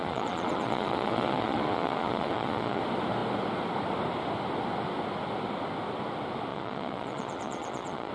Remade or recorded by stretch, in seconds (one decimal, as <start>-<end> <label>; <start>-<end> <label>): 0.0-2.8 remade; 2.8-6.5 recorded; 6.5-8.1 remade